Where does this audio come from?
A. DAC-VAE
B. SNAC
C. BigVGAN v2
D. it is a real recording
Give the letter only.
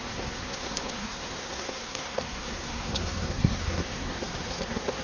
B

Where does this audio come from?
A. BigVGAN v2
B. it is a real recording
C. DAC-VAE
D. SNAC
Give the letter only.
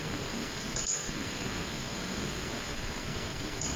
D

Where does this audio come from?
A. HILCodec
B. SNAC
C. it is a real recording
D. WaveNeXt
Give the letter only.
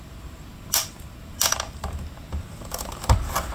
C